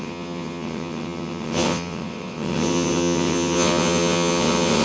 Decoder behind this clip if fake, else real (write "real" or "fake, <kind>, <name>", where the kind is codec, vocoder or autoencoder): fake, vocoder, WaveNeXt